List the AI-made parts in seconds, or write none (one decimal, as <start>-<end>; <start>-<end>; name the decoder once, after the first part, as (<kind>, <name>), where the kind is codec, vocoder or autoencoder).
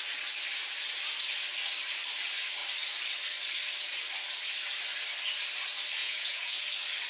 6.0-6.6 (vocoder, Vocos)